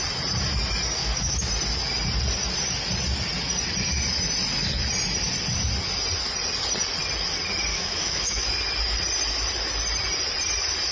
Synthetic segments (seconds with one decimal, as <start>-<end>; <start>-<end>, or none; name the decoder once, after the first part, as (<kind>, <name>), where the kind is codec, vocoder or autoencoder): 1.0-1.5 (autoencoder, DAC-VAE); 7.7-8.5